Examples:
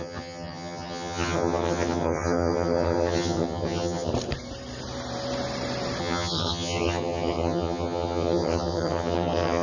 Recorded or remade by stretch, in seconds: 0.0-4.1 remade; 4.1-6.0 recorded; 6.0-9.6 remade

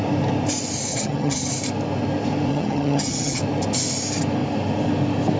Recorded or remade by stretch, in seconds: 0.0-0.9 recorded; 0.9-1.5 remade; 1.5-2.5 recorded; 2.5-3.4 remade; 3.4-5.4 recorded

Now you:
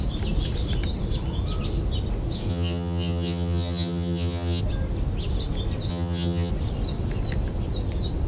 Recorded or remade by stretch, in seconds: 0.0-2.5 recorded; 2.5-4.6 remade; 4.6-5.9 recorded; 5.9-6.5 remade; 6.5-8.3 recorded